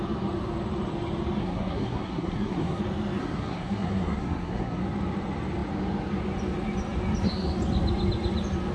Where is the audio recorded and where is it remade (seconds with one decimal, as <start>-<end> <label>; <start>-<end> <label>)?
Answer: 0.0-1.4 recorded; 1.4-2.8 remade; 2.8-3.2 recorded; 3.2-4.8 remade; 4.8-8.7 recorded